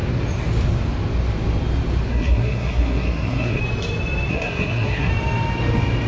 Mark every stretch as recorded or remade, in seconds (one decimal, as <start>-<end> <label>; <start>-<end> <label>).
0.0-2.1 recorded; 2.1-3.6 remade; 3.6-4.3 recorded; 4.3-5.1 remade; 5.1-6.1 recorded